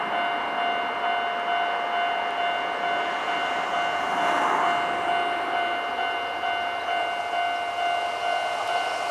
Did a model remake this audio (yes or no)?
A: no